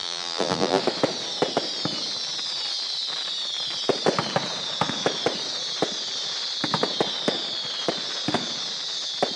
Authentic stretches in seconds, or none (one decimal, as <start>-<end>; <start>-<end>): 0.8-9.4

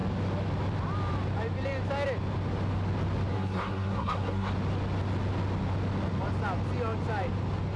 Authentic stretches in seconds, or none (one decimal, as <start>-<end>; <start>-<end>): 0.0-3.3; 4.5-7.8

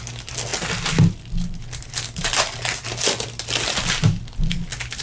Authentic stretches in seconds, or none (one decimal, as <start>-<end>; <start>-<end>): 0.0-5.0

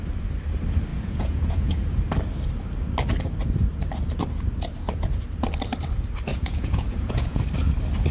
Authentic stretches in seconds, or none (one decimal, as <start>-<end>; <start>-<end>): 0.0-0.9; 2.0-6.3; 7.4-8.1

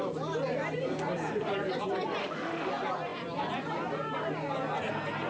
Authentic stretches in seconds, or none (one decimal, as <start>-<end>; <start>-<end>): 0.0-2.2; 2.7-5.3

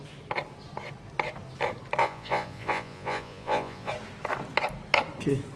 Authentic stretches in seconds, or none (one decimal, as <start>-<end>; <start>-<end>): 0.0-2.0; 3.9-5.6

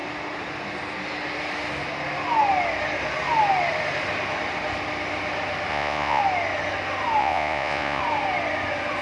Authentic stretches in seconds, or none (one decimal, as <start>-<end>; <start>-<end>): 0.0-5.7; 6.2-7.2; 8.0-9.0